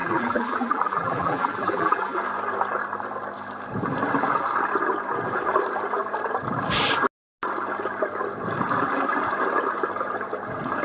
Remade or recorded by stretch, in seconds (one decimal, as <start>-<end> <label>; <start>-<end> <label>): 0.0-2.2 remade; 2.2-10.8 recorded